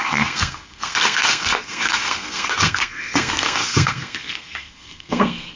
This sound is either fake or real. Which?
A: fake